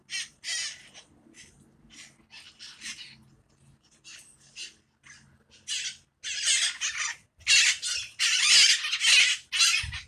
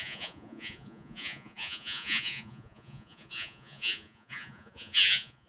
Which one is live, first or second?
first